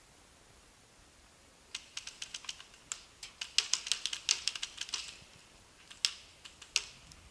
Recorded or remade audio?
recorded